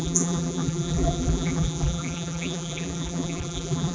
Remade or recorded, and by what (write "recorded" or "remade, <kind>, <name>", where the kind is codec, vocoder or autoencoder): remade, vocoder, BigVGAN v2